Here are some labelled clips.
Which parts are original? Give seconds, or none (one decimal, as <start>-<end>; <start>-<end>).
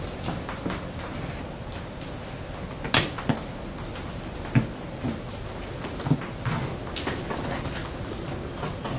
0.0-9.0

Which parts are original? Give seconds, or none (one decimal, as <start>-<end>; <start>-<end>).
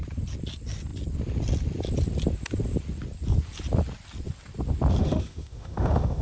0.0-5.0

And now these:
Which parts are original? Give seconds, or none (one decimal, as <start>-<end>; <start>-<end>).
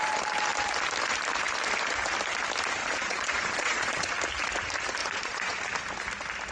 0.0-2.8; 4.1-5.0; 5.6-6.5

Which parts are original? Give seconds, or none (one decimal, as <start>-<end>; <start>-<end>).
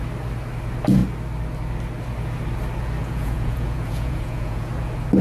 0.0-3.0; 4.7-5.2